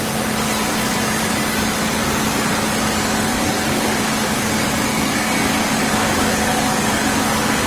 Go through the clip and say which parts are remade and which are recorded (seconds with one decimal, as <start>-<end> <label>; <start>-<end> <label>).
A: 0.0-3.3 recorded; 3.3-7.7 remade